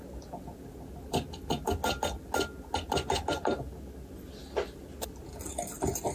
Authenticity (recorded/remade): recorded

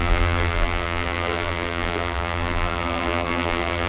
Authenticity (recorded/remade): remade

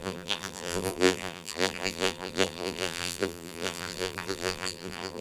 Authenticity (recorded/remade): remade